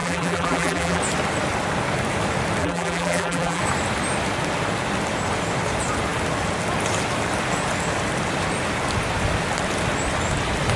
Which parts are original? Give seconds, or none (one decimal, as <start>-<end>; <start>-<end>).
1.0-2.6; 3.6-10.8